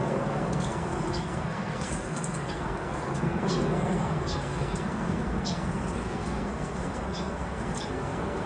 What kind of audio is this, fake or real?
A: fake